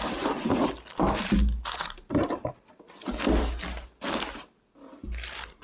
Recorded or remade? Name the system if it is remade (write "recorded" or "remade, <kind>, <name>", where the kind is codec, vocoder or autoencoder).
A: recorded